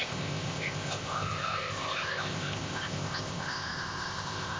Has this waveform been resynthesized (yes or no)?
yes